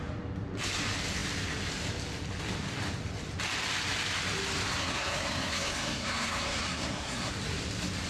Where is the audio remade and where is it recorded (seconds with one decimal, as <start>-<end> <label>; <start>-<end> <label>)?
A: 0.0-4.8 recorded; 4.8-7.3 remade; 7.3-8.1 recorded